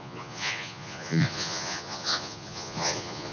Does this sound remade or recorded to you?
remade